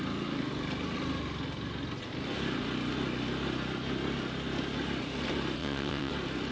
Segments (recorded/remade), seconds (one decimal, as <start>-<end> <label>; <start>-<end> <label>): 0.0-5.6 recorded; 5.6-6.1 remade; 6.1-6.5 recorded

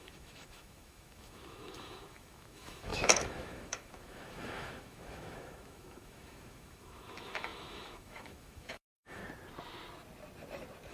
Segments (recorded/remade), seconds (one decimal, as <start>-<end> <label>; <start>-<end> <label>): 0.0-9.2 remade; 9.2-10.9 recorded

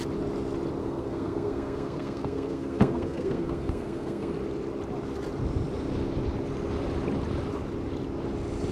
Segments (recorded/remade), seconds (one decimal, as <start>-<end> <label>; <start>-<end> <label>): 0.0-0.8 recorded; 0.8-4.3 remade; 4.3-8.7 recorded

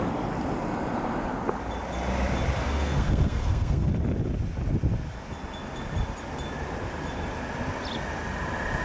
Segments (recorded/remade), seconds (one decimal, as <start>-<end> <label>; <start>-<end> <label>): 0.0-2.6 recorded; 2.6-3.9 remade; 3.9-8.8 recorded